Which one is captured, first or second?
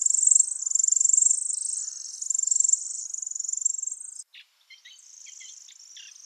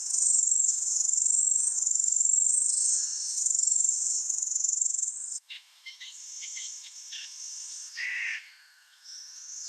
first